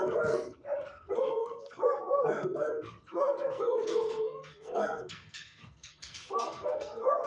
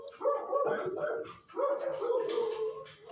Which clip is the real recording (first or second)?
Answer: second